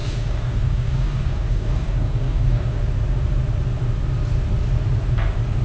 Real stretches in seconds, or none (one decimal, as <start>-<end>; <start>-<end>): 2.8-5.6